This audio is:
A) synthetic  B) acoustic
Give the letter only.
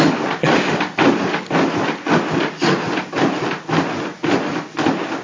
B